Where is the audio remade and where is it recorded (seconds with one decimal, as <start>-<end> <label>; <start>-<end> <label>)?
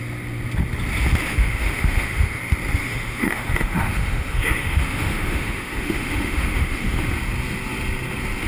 0.0-1.3 recorded; 1.3-2.4 remade; 2.4-2.8 recorded; 2.8-7.0 remade; 7.0-8.5 recorded